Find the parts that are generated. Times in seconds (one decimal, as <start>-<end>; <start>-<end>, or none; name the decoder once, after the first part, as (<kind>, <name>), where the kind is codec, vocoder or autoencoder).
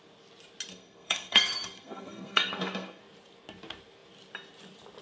0.7-3.0 (codec, SNAC)